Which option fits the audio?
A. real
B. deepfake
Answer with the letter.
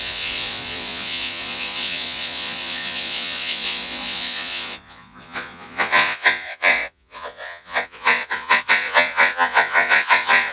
B